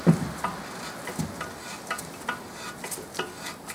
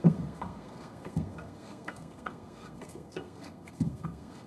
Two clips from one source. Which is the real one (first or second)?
first